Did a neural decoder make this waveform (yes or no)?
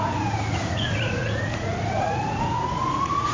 yes